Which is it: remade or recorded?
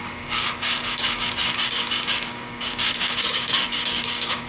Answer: remade